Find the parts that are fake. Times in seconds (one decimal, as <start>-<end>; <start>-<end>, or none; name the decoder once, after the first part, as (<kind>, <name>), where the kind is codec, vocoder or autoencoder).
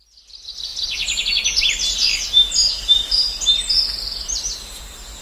none